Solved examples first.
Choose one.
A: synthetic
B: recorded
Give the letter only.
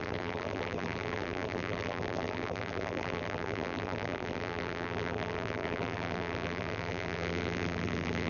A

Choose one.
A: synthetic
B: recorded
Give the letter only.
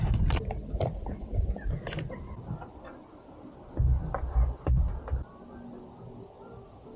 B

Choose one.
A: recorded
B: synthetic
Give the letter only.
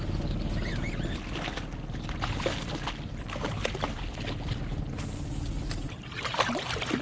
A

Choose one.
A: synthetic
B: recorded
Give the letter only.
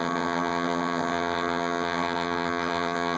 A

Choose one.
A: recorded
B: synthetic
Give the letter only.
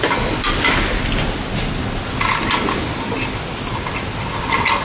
A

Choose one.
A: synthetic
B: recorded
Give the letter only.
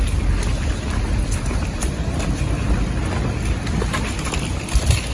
B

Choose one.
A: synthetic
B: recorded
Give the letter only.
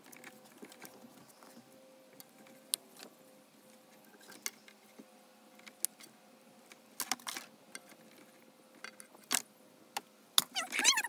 B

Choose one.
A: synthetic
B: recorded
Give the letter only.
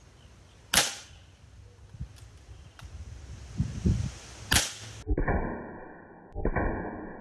B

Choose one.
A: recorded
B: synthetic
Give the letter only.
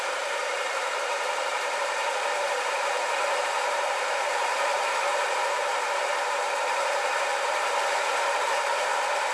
B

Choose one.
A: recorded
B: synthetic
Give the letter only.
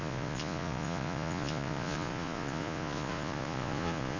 B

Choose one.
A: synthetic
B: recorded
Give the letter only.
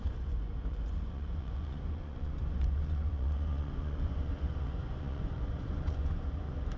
A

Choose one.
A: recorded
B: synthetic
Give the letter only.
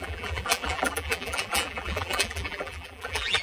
B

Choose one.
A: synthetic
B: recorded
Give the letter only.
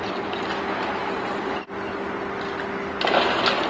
B